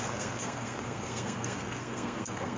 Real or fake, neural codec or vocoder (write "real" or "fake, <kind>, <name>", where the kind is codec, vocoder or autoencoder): fake, codec, SNAC